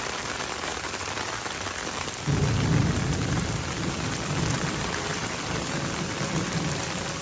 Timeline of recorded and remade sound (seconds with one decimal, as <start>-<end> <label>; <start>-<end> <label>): 0.0-7.2 remade